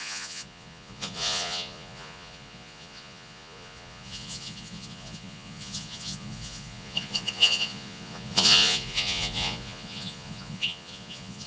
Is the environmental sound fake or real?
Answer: fake